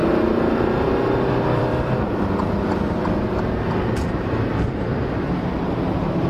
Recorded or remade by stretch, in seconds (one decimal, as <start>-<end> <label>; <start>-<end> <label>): 0.0-3.4 remade; 3.4-4.5 recorded; 4.5-6.3 remade